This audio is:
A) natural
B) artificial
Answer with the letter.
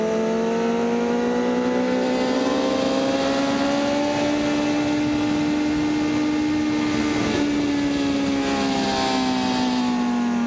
A